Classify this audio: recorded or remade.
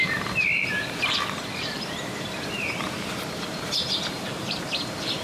remade